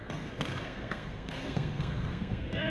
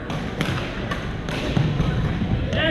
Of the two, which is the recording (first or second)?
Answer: second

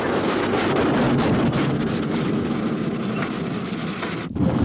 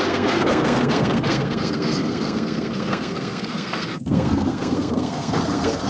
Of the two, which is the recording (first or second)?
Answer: first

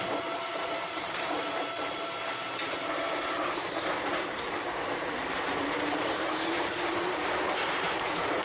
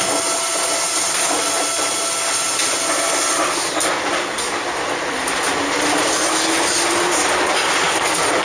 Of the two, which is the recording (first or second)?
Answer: second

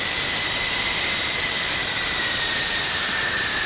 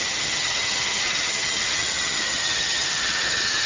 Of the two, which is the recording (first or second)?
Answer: first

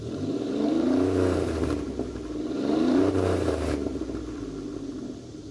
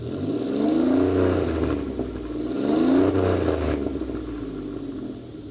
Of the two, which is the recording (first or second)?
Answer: second